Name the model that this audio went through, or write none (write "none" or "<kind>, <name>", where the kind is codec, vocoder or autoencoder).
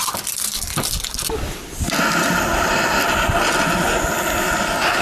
none